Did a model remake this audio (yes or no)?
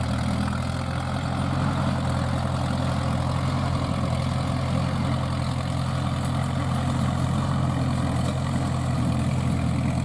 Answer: no